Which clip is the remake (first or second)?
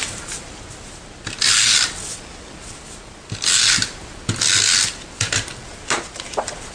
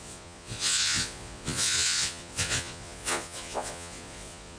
second